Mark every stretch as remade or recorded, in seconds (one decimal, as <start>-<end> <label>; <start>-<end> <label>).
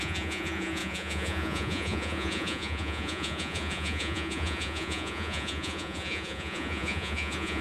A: 0.0-7.6 remade